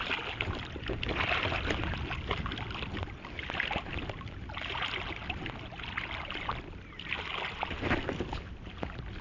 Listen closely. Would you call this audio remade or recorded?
recorded